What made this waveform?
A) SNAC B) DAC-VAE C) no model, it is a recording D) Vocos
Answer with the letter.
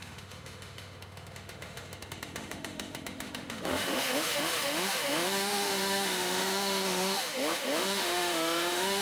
B